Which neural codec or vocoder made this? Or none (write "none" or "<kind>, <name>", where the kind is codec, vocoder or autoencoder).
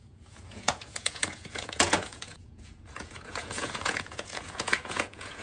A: vocoder, Vocos